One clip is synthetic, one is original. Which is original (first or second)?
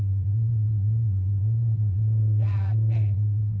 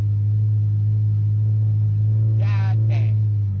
second